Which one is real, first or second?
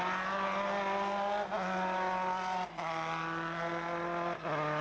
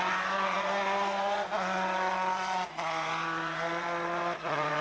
first